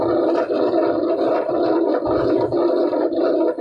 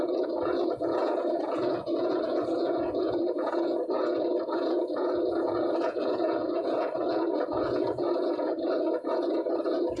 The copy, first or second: second